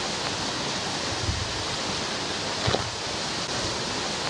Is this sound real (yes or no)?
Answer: yes